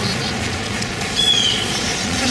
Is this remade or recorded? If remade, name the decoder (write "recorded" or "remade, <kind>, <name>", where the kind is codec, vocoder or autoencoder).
remade, vocoder, Vocos